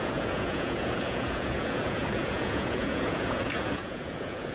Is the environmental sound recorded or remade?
remade